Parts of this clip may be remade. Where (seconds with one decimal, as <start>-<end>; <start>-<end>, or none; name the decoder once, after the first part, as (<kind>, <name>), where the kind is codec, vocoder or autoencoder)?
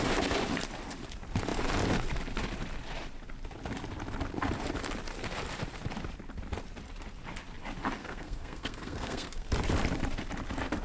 8.0-9.5 (codec, SNAC)